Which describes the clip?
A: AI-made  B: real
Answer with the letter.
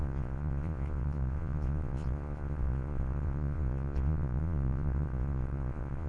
A